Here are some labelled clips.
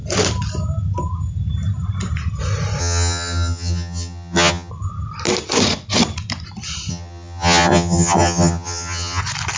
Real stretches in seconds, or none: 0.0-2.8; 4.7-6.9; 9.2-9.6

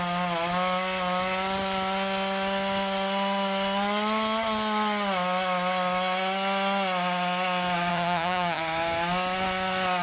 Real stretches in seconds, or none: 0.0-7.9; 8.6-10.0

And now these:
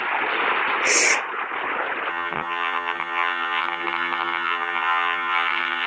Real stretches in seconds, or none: 0.0-2.1

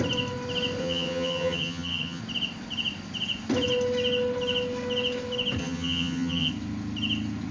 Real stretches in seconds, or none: 0.0-0.8; 2.2-5.6; 6.5-7.5